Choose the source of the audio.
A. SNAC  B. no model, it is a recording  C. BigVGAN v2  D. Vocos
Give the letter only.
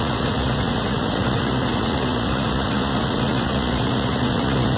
D